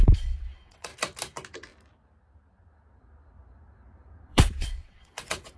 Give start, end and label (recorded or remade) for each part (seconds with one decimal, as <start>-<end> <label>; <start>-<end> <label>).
0.0-0.9 remade; 0.9-4.3 recorded; 4.3-5.6 remade